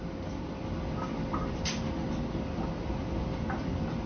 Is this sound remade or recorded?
recorded